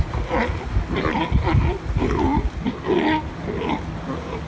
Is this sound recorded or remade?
recorded